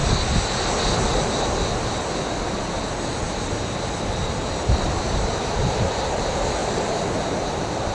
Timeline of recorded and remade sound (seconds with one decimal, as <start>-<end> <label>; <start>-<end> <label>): 0.0-4.5 recorded; 4.5-7.9 remade